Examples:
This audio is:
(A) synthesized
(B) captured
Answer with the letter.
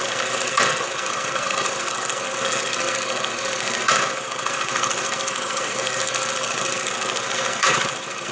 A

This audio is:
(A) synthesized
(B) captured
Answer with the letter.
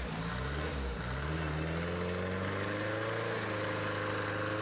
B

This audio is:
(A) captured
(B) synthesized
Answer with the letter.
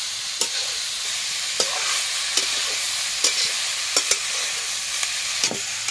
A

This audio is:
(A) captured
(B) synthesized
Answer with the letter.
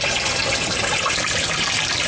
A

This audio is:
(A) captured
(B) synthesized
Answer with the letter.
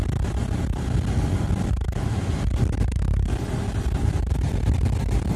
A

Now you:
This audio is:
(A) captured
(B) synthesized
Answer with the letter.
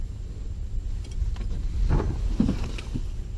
A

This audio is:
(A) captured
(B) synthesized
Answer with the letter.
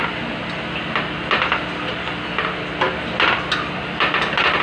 A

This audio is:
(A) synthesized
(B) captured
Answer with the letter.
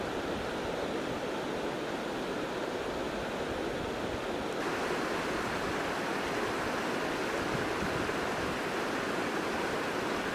B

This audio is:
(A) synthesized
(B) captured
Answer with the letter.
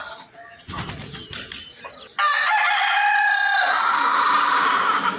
B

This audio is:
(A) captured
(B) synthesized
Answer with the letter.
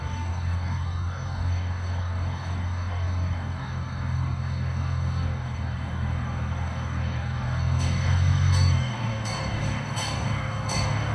B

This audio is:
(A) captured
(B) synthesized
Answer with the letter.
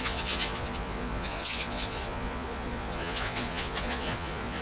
B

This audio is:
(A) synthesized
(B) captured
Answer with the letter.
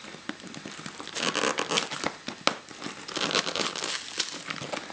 B